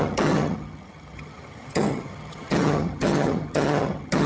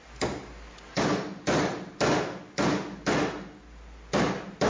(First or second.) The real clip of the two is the second